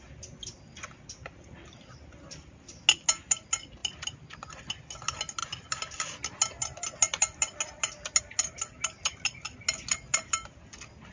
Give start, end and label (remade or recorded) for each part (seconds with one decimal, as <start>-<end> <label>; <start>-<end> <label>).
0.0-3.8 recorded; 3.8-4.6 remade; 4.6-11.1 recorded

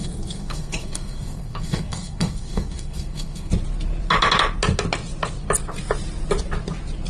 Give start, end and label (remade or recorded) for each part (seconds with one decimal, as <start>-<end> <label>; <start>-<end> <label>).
0.0-3.5 remade; 3.5-7.1 recorded

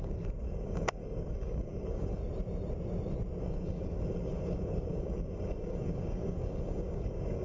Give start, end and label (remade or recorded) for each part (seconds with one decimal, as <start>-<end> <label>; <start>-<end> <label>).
0.0-2.2 remade; 2.2-3.4 recorded; 3.4-7.4 remade

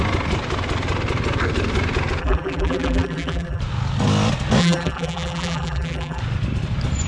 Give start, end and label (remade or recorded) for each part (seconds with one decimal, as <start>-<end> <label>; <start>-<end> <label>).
0.0-2.2 recorded; 2.2-3.6 remade; 3.6-4.6 recorded; 4.6-6.2 remade; 6.2-7.1 recorded

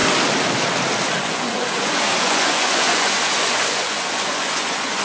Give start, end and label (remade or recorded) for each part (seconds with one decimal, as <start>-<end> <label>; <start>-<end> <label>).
0.0-1.2 recorded; 1.2-5.0 remade

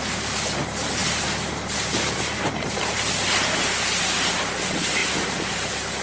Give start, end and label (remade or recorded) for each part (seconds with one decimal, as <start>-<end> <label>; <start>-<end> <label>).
0.0-6.0 recorded

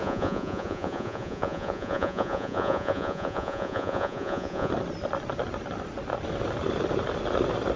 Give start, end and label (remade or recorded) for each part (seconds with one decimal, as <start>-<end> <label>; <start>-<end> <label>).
0.0-4.7 remade; 4.7-7.8 recorded